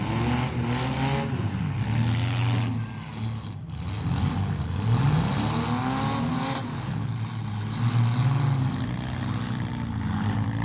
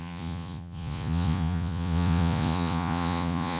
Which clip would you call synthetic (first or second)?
second